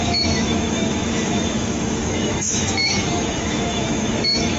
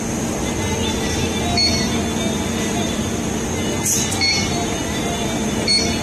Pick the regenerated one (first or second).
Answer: first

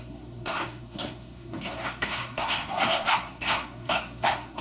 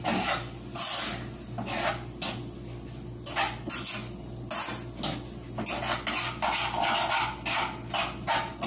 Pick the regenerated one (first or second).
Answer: first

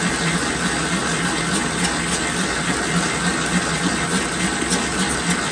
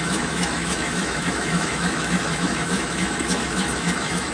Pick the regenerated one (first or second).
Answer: second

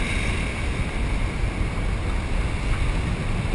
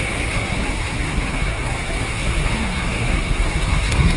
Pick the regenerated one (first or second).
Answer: second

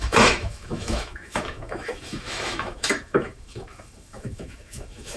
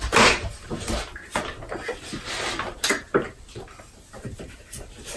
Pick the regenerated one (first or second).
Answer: first